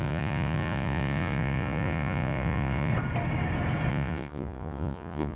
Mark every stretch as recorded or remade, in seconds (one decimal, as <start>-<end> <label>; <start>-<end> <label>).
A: 0.0-2.9 remade; 2.9-3.9 recorded; 3.9-5.3 remade